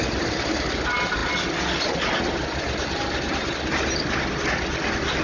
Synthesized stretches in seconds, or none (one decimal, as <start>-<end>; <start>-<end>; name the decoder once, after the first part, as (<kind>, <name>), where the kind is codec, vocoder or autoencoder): none